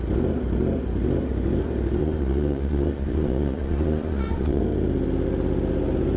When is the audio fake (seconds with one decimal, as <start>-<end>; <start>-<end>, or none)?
2.0-4.6